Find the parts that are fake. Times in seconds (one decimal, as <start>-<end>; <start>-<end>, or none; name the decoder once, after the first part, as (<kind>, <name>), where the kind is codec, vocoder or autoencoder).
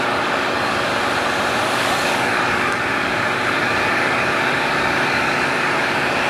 0.0-0.9 (codec, DAC); 1.7-6.3